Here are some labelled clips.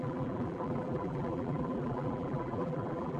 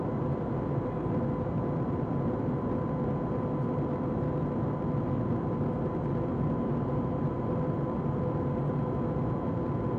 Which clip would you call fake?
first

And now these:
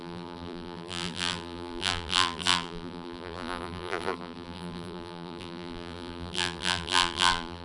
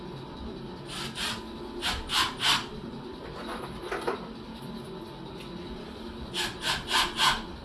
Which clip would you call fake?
first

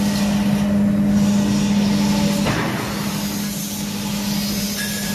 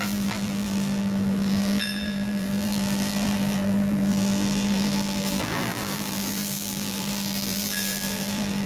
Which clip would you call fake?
second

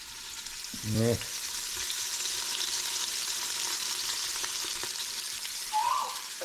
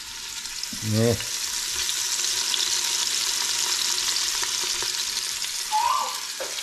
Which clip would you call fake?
first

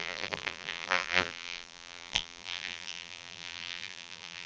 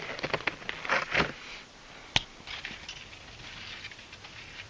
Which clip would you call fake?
first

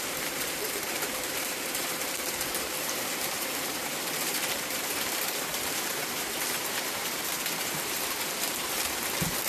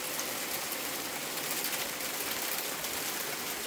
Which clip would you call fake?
first